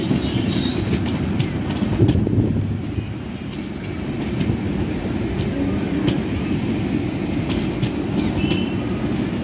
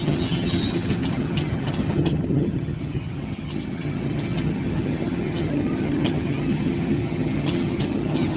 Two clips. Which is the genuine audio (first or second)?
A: first